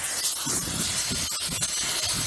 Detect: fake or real real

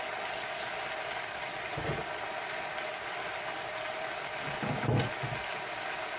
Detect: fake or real real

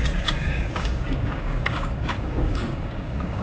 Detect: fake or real fake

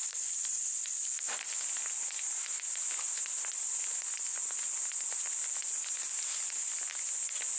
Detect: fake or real real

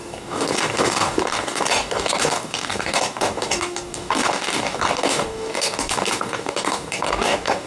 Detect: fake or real fake